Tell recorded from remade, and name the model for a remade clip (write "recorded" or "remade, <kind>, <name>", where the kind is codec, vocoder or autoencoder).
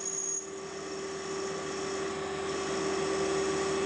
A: recorded